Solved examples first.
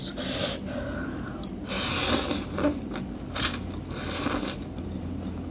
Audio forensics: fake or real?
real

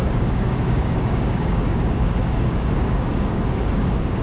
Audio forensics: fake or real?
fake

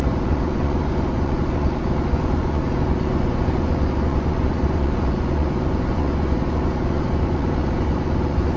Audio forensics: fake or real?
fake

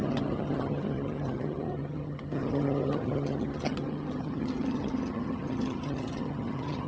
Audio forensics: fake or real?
fake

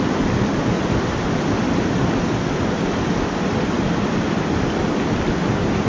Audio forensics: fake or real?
real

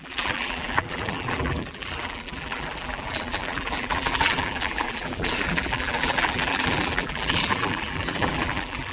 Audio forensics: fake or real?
fake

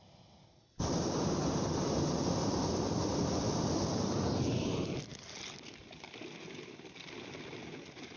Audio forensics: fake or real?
real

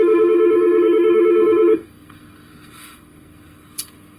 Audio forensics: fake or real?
fake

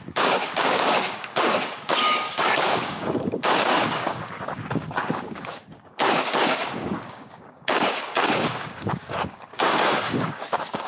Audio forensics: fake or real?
fake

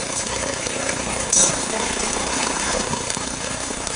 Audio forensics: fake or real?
fake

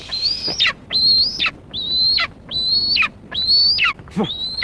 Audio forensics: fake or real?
real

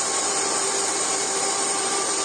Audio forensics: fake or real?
fake